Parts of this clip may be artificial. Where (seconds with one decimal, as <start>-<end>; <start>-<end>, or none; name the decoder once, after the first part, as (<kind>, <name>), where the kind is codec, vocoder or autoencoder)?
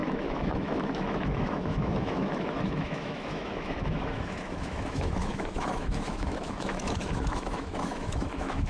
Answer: 0.0-8.7 (autoencoder, DAC-VAE)